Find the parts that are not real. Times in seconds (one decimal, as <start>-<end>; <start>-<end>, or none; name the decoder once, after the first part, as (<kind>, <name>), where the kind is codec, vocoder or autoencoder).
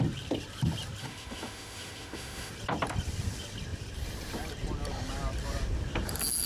1.0-2.5 (autoencoder, DAC-VAE)